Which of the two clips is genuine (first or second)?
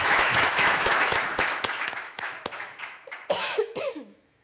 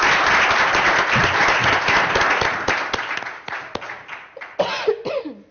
second